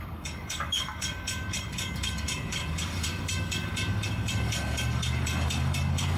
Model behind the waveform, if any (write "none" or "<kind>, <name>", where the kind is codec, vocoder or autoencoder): codec, DAC